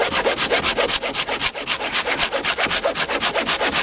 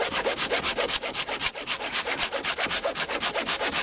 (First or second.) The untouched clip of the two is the first